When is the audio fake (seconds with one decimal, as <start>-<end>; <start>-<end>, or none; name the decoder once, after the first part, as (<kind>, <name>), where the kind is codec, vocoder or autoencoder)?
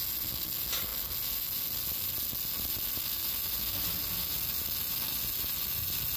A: none